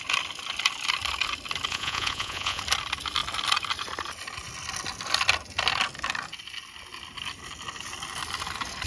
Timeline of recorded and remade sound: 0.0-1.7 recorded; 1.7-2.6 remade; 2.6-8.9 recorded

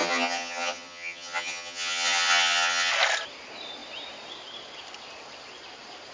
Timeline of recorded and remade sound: 0.0-2.9 remade; 2.9-6.1 recorded

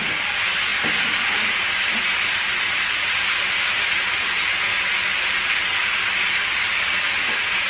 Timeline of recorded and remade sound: 0.0-7.7 recorded

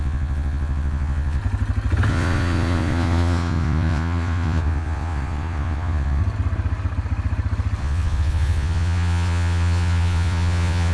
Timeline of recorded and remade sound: 0.0-1.4 remade; 1.4-2.1 recorded; 2.1-6.2 remade; 6.2-7.8 recorded; 7.8-10.9 remade

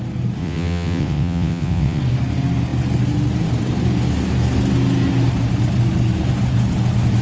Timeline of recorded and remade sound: 0.0-0.4 recorded; 0.4-2.0 remade; 2.0-7.2 recorded

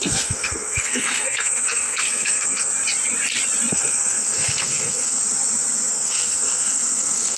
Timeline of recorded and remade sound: 0.0-2.7 remade; 2.7-3.7 recorded; 3.7-5.2 remade; 5.2-5.9 recorded; 5.9-7.4 remade

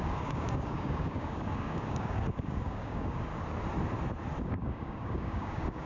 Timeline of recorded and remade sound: 0.0-3.3 remade; 3.3-4.4 recorded; 4.4-5.9 remade

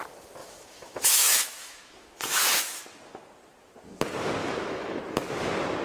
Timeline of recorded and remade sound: 0.0-0.4 recorded; 0.4-2.8 remade; 2.8-4.4 recorded; 4.4-5.0 remade; 5.0-5.8 recorded